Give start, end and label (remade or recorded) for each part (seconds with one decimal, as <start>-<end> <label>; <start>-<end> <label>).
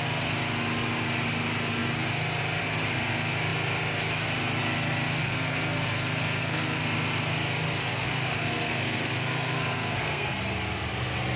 0.0-5.2 recorded; 5.2-6.8 remade; 6.8-7.9 recorded; 7.9-10.4 remade; 10.4-11.4 recorded